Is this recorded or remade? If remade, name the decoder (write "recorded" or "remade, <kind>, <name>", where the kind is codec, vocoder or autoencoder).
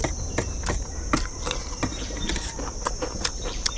remade, vocoder, BigVGAN v2